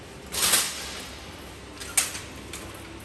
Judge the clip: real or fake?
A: real